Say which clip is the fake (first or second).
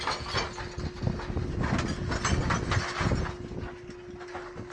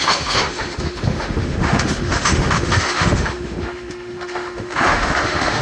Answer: second